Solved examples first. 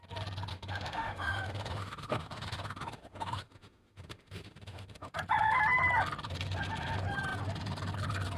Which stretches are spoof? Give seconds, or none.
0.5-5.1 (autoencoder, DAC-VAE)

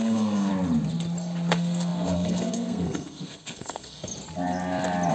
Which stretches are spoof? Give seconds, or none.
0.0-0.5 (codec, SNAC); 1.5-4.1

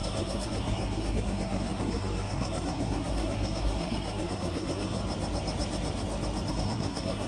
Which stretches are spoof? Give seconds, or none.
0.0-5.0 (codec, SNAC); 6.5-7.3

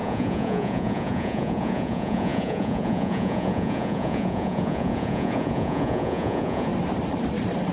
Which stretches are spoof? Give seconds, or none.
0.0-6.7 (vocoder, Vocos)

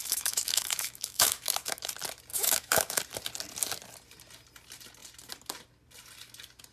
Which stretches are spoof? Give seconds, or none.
0.0-1.9 (autoencoder, DAC-VAE); 2.3-3.0